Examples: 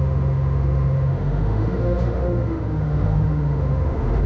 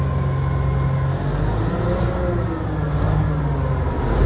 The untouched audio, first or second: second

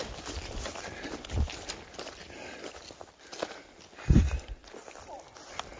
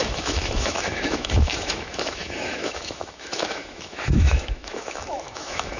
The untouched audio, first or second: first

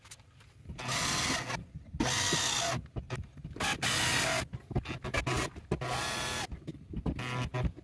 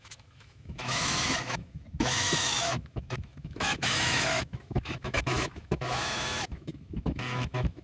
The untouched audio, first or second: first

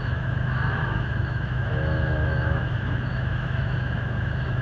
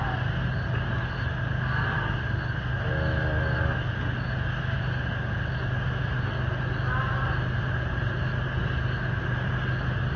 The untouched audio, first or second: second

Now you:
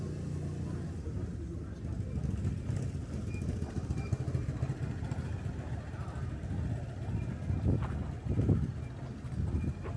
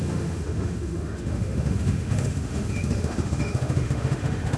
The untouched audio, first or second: first